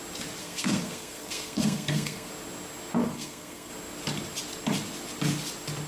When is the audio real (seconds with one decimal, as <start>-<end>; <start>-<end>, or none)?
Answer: 0.0-0.4; 2.3-3.0; 3.7-5.9